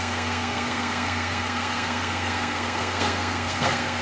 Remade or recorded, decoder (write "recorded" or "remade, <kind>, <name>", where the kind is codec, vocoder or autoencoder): remade, codec, SNAC